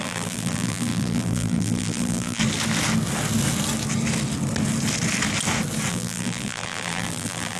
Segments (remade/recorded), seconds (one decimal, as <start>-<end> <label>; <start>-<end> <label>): 0.0-2.4 remade; 2.4-5.9 recorded; 5.9-7.6 remade